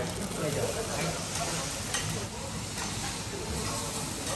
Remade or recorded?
recorded